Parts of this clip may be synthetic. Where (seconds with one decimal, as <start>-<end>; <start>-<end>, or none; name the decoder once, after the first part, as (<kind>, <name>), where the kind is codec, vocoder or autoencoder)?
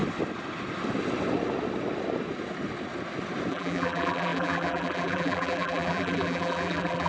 3.5-7.1 (vocoder, BigVGAN v2)